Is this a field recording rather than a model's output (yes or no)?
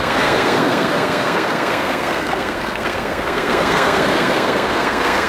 no